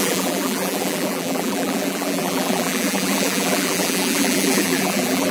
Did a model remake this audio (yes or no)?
yes